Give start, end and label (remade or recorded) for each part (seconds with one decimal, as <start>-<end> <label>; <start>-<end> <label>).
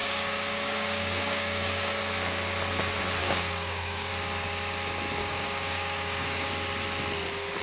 0.0-2.0 remade; 2.0-3.2 recorded; 3.2-4.1 remade; 4.1-5.2 recorded; 5.2-6.5 remade; 6.5-7.6 recorded